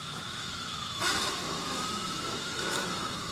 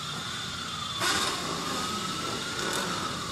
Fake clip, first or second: first